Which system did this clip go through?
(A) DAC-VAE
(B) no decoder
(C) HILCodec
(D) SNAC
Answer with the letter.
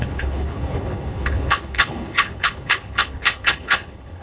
C